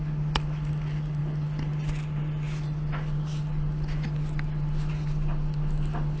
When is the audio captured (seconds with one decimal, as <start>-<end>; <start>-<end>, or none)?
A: 0.0-6.2